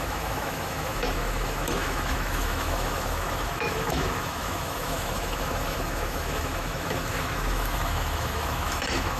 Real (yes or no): no